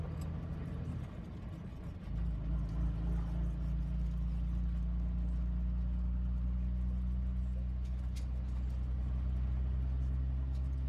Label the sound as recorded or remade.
recorded